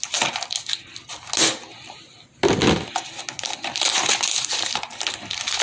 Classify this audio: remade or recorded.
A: recorded